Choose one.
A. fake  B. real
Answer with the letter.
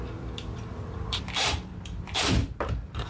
A